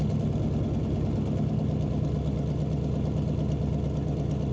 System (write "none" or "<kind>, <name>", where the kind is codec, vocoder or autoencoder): none